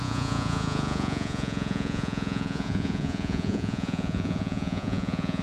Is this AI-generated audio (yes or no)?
yes